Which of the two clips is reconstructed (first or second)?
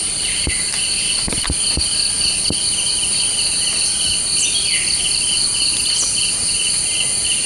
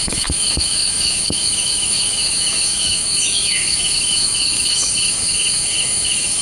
second